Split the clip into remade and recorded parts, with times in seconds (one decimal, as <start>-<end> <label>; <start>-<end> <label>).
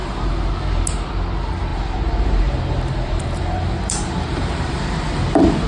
0.0-0.8 remade; 0.8-1.7 recorded; 1.7-5.1 remade; 5.1-5.7 recorded